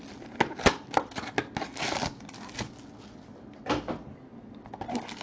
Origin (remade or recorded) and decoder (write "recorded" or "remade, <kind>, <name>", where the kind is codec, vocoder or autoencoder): recorded